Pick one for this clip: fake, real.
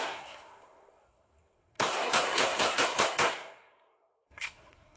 fake